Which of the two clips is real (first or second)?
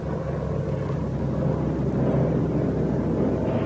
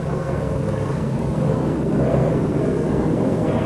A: first